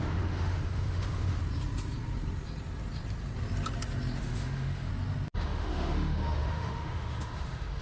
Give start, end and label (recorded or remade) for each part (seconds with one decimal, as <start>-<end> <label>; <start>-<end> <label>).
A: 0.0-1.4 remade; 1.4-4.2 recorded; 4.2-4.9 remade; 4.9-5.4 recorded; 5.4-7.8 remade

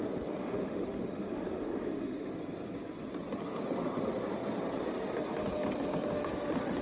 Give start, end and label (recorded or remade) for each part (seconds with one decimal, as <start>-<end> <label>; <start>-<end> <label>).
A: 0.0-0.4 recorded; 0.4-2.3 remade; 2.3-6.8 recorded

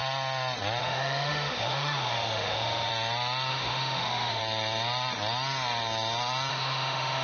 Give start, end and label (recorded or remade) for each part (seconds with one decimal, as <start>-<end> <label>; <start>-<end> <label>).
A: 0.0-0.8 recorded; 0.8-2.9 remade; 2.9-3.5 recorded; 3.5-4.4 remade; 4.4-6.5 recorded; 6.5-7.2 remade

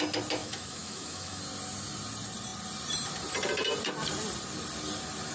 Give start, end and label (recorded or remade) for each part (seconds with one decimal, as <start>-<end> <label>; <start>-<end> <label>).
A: 0.0-0.4 recorded; 0.4-1.4 remade; 1.4-5.3 recorded

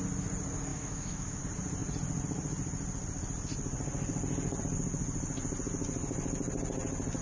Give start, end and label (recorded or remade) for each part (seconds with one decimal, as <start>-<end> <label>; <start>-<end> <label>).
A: 0.0-0.7 recorded; 0.7-1.4 remade; 1.4-7.2 recorded

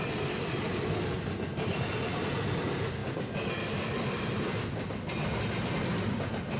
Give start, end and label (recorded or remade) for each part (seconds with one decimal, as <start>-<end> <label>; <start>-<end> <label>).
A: 0.0-6.6 recorded

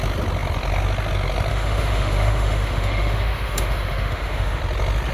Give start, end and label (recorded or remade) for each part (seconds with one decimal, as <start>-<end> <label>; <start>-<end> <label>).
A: 0.0-1.5 recorded; 1.5-4.6 remade; 4.6-5.1 recorded

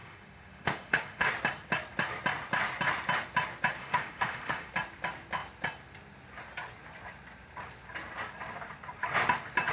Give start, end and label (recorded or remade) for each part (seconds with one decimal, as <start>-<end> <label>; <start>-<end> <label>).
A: 0.0-1.3 remade; 1.3-3.8 recorded; 3.8-4.7 remade; 4.7-9.7 recorded